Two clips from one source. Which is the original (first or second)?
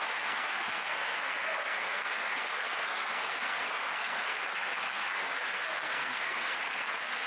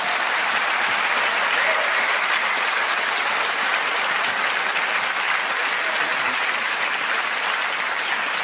second